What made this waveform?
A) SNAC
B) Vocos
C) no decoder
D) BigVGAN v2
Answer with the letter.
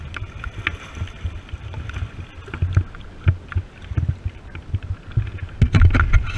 C